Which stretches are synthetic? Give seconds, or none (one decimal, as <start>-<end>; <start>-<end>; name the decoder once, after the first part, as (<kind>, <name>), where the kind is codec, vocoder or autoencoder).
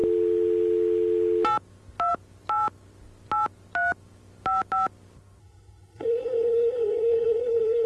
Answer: 5.4-7.9 (codec, SNAC)